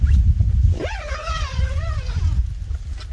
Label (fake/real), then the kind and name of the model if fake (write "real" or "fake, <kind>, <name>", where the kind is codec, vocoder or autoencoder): real